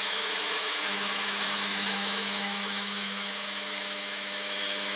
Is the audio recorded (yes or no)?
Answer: no